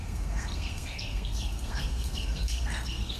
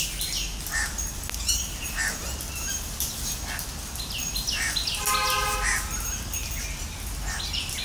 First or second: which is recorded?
second